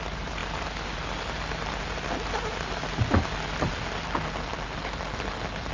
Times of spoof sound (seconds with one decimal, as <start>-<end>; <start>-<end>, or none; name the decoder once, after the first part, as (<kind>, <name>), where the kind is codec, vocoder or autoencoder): none